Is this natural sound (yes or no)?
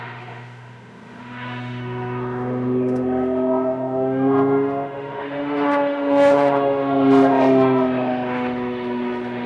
no